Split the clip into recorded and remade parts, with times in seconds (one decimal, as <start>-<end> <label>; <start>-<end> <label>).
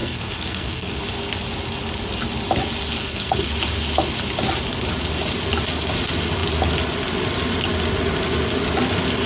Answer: 0.0-1.0 remade; 1.0-3.0 recorded; 3.0-3.5 remade; 3.5-9.3 recorded